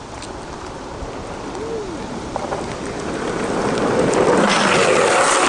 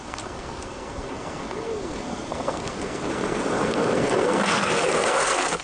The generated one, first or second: second